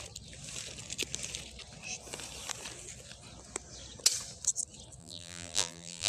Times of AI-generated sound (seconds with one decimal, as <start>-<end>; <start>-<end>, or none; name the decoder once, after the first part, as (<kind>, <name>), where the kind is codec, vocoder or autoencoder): 5.0-6.1 (vocoder, BigVGAN v2)